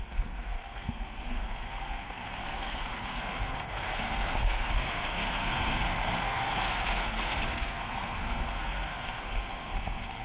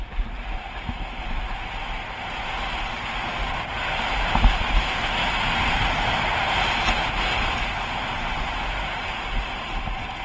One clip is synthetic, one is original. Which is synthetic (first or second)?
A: first